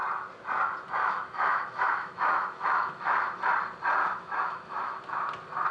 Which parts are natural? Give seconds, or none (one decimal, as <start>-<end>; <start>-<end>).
0.0-1.0; 3.4-4.0; 5.0-5.7